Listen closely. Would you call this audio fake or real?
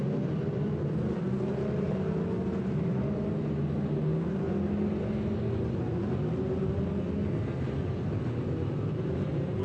real